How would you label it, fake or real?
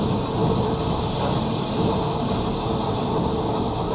real